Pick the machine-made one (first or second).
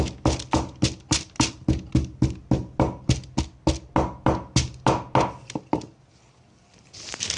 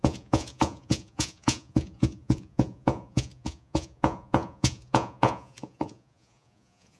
second